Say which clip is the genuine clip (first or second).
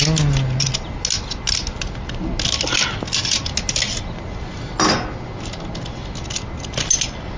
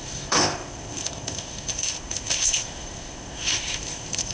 first